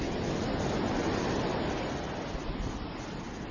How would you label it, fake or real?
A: real